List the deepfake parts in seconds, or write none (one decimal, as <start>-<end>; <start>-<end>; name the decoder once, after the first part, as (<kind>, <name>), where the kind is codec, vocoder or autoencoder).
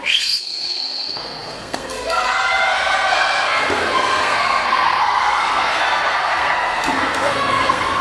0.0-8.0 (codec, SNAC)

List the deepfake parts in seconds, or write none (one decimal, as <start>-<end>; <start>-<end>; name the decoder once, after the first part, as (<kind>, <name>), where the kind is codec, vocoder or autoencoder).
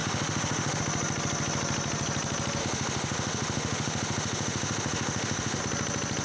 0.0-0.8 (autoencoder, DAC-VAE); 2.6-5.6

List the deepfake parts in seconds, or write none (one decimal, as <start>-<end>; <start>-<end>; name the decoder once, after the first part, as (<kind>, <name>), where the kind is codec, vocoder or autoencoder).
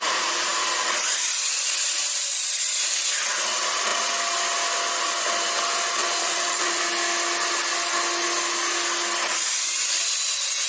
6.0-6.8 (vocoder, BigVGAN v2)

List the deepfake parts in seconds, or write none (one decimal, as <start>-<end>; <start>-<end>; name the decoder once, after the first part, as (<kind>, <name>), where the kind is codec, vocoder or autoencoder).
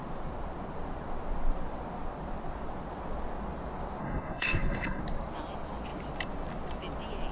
4.0-5.0 (codec, SNAC)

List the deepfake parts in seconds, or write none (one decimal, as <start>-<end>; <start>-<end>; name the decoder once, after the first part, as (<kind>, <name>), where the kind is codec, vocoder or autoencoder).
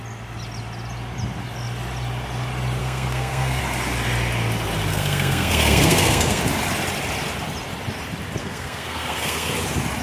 2.8-3.6 (codec, SNAC); 4.9-6.4; 8.4-9.5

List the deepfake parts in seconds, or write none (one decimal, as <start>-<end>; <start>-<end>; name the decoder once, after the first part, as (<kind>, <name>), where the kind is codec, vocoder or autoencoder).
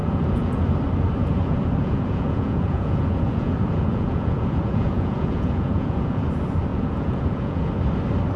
0.0-0.6 (vocoder, Vocos); 1.2-6.2; 6.7-7.7